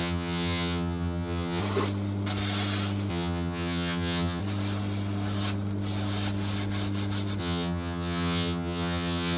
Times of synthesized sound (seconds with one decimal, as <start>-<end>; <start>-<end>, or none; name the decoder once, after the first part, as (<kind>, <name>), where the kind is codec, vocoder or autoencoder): 0.0-1.6 (vocoder, HiFi-GAN); 3.1-4.4; 7.4-9.4